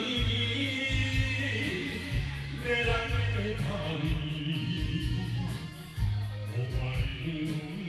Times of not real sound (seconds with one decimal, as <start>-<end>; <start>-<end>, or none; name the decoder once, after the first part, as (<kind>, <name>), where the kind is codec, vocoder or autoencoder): 0.0-7.9 (codec, DAC)